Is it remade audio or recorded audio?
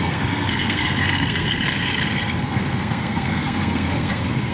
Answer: remade